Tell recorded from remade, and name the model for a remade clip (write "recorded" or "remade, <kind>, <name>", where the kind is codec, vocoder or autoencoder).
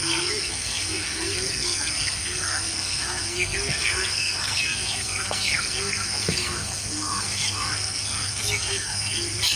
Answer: remade, codec, SNAC